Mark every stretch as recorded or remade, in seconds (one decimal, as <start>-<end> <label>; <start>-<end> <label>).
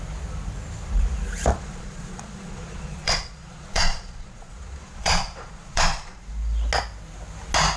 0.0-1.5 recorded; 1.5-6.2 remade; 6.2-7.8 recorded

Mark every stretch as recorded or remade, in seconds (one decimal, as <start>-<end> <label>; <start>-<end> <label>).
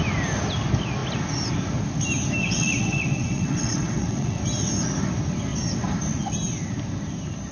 0.0-2.4 recorded; 2.4-4.4 remade; 4.4-7.5 recorded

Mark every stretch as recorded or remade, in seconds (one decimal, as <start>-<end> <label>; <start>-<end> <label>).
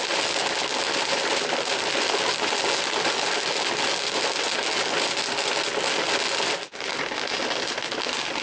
0.0-8.4 recorded